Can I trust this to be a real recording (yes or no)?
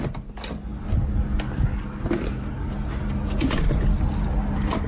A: yes